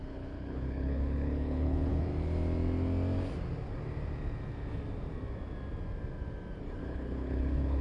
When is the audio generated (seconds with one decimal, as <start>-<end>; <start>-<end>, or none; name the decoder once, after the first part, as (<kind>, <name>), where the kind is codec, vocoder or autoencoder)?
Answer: 0.0-2.1 (codec, HILCodec); 6.8-7.8